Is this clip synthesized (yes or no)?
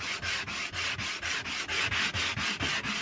no